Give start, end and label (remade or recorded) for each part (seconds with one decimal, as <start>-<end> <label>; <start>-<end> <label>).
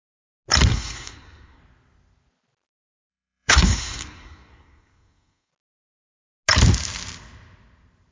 0.0-0.7 recorded; 0.7-1.6 remade; 1.6-3.1 recorded; 3.1-5.5 remade; 5.5-8.1 recorded